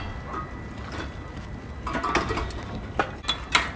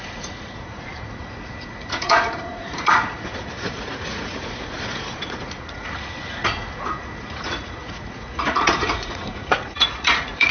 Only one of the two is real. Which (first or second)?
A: first